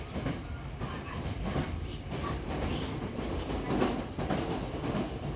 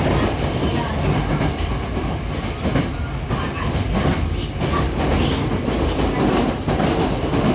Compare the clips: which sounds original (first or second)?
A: second